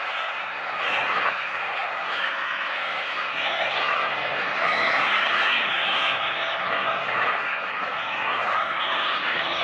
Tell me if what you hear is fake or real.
fake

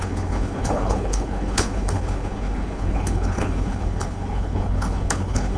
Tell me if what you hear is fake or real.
fake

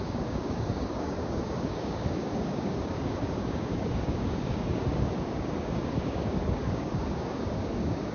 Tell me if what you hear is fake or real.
fake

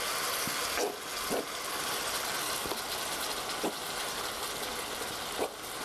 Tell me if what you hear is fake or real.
real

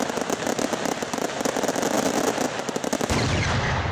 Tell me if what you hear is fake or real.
real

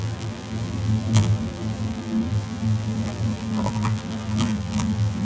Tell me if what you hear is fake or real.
fake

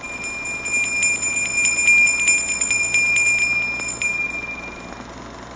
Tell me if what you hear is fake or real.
real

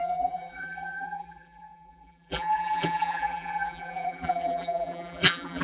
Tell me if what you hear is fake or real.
fake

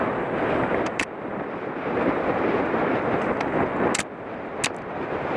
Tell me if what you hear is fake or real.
real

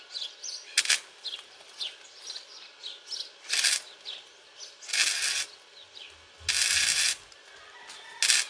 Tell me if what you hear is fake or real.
real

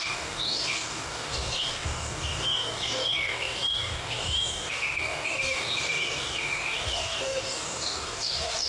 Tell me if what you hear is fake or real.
fake